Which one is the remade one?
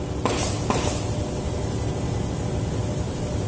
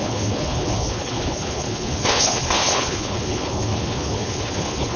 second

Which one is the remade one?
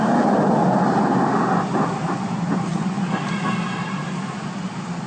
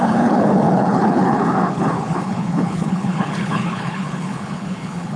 second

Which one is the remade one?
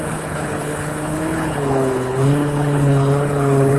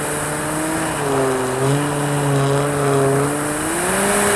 first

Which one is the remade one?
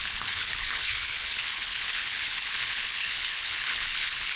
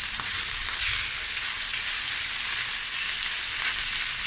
first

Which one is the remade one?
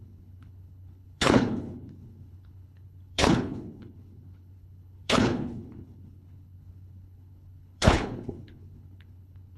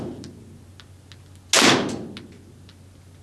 first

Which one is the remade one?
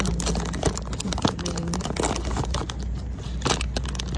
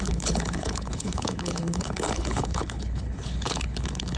second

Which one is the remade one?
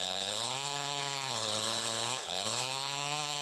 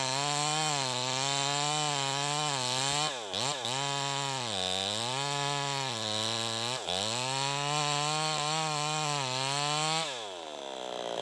first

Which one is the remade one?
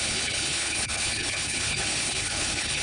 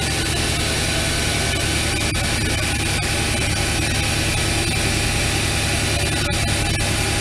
first